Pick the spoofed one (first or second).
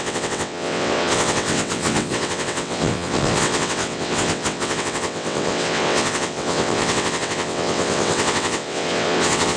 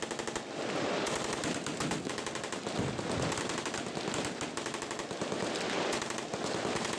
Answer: first